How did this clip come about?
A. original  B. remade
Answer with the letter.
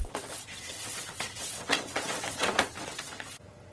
B